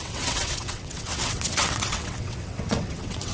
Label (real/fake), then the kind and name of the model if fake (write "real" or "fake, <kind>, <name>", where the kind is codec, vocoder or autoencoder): fake, vocoder, WaveNeXt